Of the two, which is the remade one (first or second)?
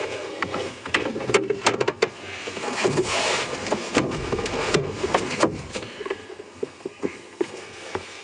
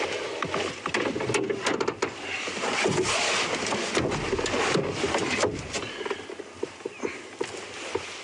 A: first